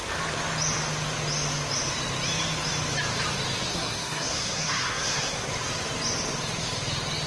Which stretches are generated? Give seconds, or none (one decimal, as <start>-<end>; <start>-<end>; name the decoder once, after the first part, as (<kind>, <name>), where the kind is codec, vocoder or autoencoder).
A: 3.7-5.5 (codec, SNAC)

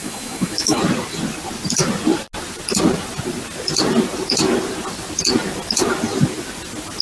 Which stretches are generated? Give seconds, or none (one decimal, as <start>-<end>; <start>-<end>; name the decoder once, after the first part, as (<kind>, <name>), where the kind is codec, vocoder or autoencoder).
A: 0.0-0.8 (autoencoder, DAC-VAE)

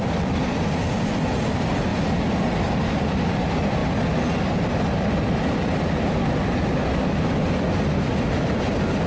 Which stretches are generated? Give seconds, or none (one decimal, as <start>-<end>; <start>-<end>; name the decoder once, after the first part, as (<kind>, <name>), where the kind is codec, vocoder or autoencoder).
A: 1.9-2.4 (vocoder, BigVGAN v2)